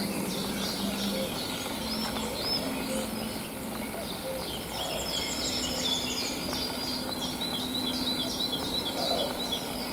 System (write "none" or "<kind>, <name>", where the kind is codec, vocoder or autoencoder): none